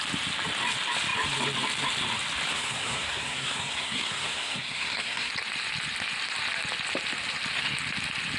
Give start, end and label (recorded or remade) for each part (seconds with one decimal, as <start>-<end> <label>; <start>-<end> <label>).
0.0-2.5 recorded; 2.5-5.3 remade; 5.3-8.4 recorded